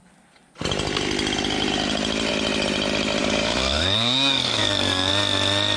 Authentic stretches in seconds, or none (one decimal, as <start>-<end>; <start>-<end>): 0.0-3.2; 5.1-5.8